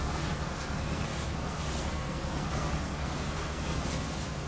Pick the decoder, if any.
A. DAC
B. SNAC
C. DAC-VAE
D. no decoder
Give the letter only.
B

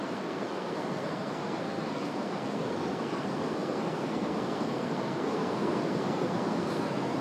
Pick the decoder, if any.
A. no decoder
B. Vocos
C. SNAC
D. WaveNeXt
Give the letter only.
C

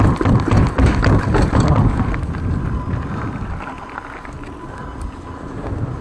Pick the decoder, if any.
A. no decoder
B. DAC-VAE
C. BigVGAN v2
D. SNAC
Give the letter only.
A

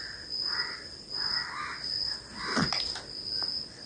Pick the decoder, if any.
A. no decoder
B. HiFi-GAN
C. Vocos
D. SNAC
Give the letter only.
A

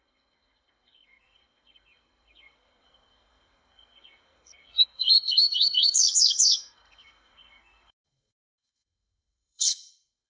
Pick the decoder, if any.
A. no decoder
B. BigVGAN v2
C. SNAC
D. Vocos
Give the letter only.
C